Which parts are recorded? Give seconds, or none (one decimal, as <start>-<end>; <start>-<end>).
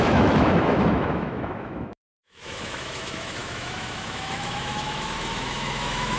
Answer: none